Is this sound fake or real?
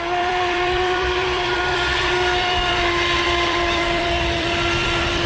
fake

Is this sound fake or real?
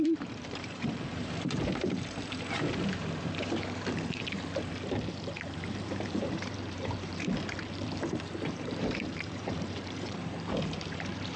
fake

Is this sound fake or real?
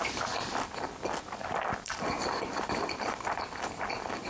real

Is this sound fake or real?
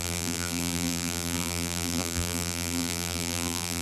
fake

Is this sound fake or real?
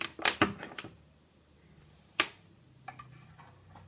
real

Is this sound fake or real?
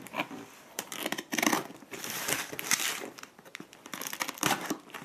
fake